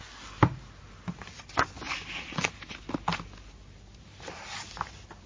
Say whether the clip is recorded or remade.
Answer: recorded